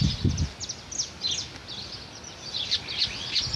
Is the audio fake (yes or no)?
no